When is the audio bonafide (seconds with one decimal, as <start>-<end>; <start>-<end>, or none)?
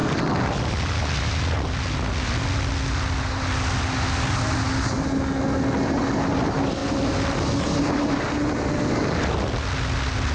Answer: 0.0-10.3